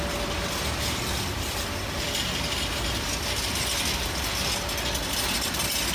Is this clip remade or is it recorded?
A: recorded